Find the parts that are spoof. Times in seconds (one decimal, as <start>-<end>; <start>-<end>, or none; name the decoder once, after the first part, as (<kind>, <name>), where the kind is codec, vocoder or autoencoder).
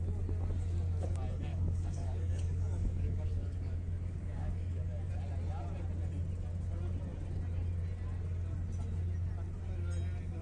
1.5-5.1 (codec, DAC)